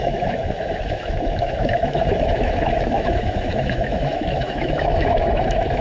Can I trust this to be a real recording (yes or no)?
no